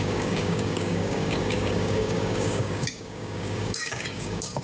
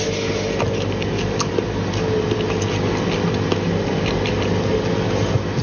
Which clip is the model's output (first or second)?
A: first